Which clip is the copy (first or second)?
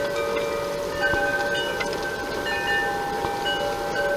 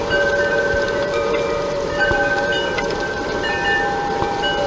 second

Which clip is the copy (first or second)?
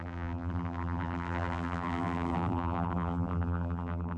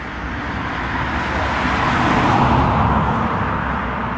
first